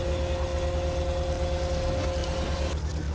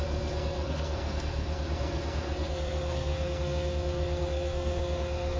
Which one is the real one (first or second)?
first